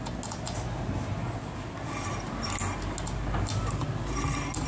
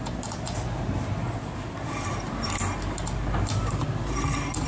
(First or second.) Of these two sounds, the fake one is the second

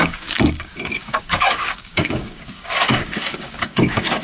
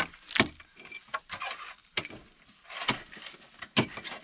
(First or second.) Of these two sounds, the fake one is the first